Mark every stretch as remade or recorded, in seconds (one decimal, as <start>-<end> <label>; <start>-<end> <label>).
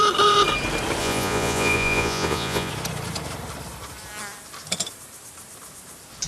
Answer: 0.0-1.0 recorded; 1.0-2.7 remade; 2.7-6.3 recorded